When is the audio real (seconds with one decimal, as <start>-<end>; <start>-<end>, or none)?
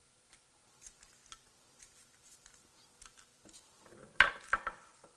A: 0.0-5.2